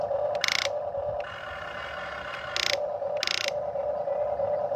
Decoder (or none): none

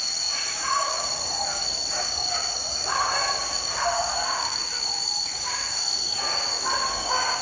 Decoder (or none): codec, DAC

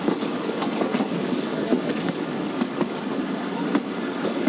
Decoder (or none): codec, DAC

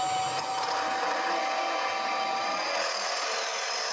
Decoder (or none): none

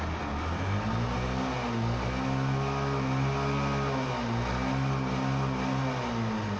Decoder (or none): none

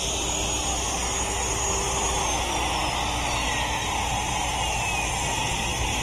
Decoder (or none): none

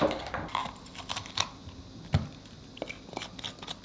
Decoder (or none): none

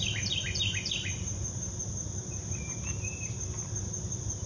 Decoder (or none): none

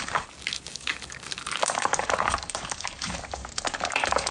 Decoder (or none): codec, DAC